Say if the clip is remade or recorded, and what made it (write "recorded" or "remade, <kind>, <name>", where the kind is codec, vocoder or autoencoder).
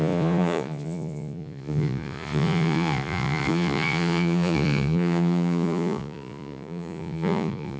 remade, vocoder, Vocos